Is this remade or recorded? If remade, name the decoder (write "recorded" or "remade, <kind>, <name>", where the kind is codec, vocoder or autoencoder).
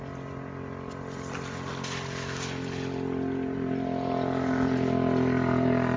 recorded